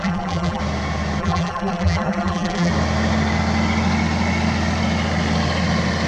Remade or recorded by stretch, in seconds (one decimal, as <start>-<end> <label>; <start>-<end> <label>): 0.0-0.6 remade; 0.6-1.2 recorded; 1.2-2.7 remade; 2.7-6.1 recorded